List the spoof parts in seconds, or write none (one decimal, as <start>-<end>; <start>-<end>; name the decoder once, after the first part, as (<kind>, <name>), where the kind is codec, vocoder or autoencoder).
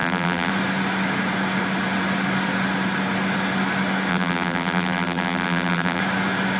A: 0.0-0.5 (vocoder, BigVGAN v2); 4.1-6.0